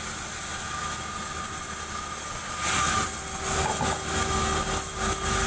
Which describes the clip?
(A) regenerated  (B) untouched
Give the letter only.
B